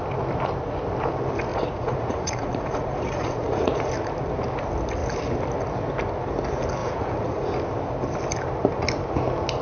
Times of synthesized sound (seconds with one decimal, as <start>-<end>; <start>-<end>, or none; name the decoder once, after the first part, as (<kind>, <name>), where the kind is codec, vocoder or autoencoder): 1.5-3.9 (vocoder, Vocos); 6.8-7.5

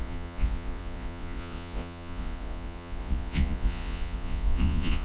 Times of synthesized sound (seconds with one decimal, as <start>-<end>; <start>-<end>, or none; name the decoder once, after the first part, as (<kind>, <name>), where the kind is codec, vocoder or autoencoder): 0.0-5.0 (vocoder, Vocos)

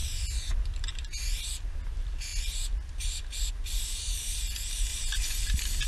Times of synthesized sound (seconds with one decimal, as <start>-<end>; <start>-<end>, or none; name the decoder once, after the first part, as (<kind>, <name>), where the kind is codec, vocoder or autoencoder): 4.9-5.5 (vocoder, Vocos)

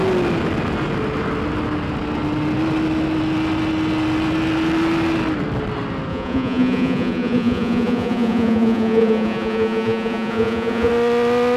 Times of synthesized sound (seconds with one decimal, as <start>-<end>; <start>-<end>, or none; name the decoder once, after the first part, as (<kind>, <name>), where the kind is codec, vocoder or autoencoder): 6.1-10.9 (vocoder, Vocos)

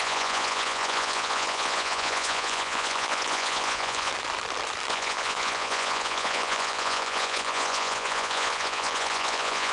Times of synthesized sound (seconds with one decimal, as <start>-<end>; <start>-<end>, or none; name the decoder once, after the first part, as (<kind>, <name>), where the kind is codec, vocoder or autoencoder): 0.0-4.1 (vocoder, Vocos); 4.9-9.7

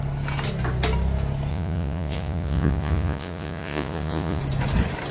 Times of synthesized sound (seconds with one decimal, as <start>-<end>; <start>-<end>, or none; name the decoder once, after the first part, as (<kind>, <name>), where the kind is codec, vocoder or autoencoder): 1.5-4.4 (vocoder, Vocos)

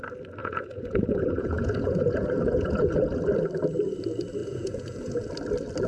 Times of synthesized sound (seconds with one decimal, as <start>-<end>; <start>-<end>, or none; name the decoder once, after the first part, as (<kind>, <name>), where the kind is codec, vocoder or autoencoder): 0.4-3.2 (vocoder, Vocos); 4.4-5.3